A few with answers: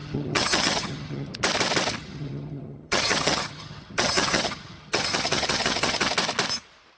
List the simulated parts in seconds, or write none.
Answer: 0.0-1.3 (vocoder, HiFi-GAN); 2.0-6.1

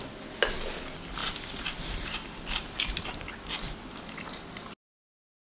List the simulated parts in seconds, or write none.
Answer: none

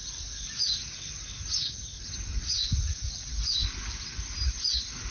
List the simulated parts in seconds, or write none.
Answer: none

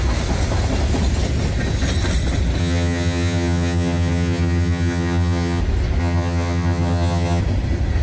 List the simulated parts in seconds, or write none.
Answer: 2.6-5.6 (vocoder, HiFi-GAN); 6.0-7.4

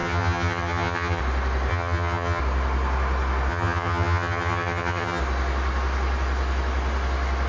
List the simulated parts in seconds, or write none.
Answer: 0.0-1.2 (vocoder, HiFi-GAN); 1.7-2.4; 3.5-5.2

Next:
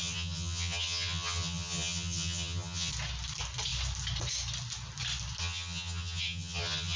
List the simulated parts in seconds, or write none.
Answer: 0.0-2.9 (vocoder, HiFi-GAN); 5.4-7.0

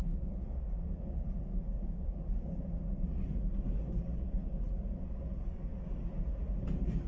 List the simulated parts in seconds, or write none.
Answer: none

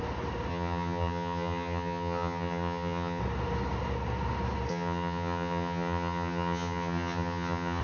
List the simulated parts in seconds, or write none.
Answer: 0.5-3.2 (vocoder, HiFi-GAN); 4.7-7.8